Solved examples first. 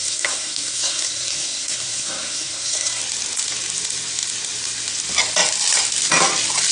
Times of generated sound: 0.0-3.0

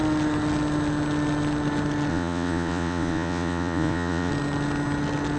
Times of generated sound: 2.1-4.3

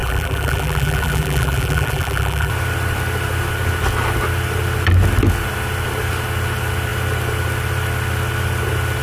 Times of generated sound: 0.0-2.5

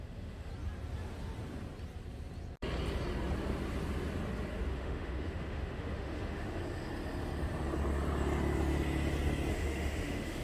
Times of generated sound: 0.0-0.5; 4.7-6.6; 9.5-10.4

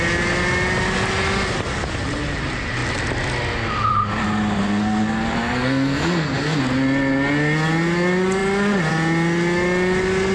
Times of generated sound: 4.6-6.6

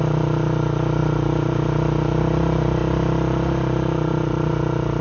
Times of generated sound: none